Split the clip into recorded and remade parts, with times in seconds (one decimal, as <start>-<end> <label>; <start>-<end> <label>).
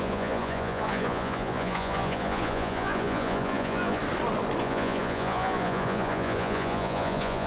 0.0-4.0 remade; 4.0-4.6 recorded; 4.6-7.5 remade